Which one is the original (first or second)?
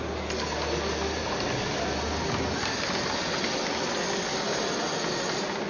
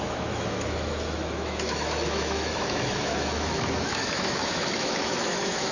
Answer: first